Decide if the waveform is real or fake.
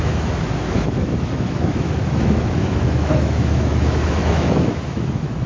fake